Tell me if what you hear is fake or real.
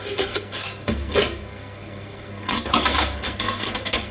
fake